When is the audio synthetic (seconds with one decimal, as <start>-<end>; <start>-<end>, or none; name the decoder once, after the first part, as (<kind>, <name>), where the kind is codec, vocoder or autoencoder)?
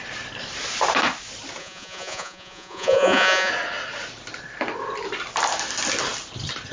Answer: 1.6-3.5 (vocoder, Vocos)